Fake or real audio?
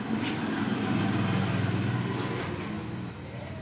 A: real